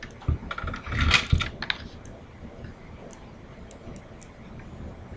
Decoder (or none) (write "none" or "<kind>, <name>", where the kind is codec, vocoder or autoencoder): none